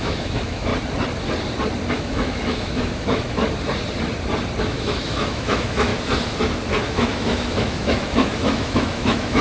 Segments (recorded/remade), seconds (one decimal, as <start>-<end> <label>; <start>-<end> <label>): 0.0-0.7 remade; 0.7-1.9 recorded; 1.9-3.4 remade; 3.4-4.6 recorded; 4.6-5.9 remade; 5.9-6.9 recorded; 6.9-9.4 remade